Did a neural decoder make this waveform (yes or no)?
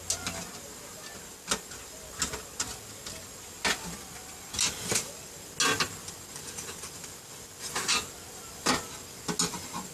no